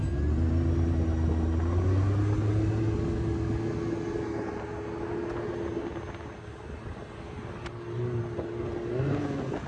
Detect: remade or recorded recorded